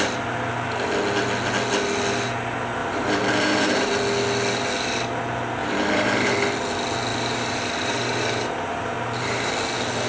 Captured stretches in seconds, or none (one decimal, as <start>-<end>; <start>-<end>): 0.0-2.8; 3.9-5.6; 6.3-7.1; 9.5-10.1